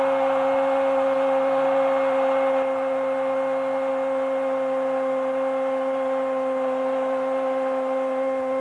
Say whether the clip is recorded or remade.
recorded